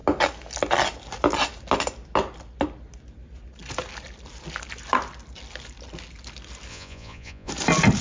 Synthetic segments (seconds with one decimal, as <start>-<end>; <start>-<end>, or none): 6.7-7.5

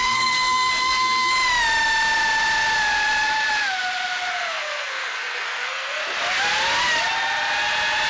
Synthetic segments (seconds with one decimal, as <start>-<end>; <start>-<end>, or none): 0.0-1.3; 4.3-6.0

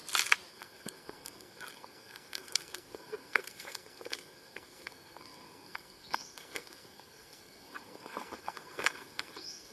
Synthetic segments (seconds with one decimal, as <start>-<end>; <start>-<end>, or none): 0.5-9.7